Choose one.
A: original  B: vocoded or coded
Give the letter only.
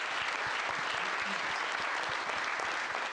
A